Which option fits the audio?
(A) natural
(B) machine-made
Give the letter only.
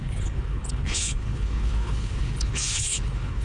B